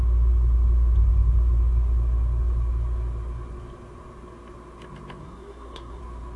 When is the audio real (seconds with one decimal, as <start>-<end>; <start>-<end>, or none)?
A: 0.0-5.2; 6.0-6.4